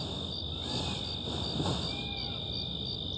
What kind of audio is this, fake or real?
real